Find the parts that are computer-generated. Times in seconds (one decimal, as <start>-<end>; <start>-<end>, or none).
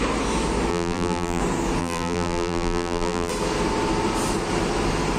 0.7-1.4; 1.8-3.3